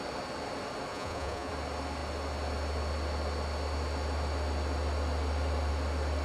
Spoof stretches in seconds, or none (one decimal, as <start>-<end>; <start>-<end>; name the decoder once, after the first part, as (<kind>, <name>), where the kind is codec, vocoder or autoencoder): 0.9-1.5 (vocoder, Vocos)